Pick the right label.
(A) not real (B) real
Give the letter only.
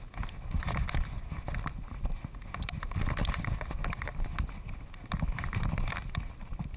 B